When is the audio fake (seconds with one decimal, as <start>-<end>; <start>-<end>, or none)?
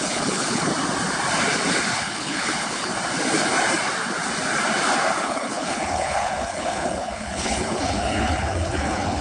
0.0-0.7; 2.0-2.9; 5.2-9.2